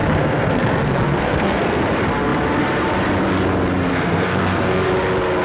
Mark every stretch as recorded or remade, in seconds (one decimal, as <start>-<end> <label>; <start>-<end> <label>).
0.0-1.8 remade; 1.8-3.9 recorded; 3.9-4.9 remade; 4.9-5.4 recorded